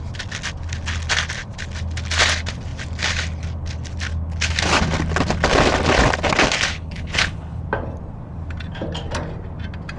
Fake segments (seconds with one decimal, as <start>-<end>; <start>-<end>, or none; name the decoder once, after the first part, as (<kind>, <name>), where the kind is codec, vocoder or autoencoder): 6.7-7.6 (codec, HILCodec)